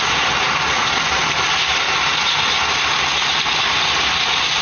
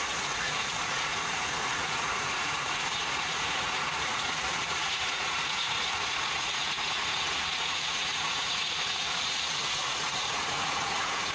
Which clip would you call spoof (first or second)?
second